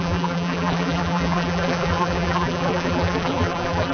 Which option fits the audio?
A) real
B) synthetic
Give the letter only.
B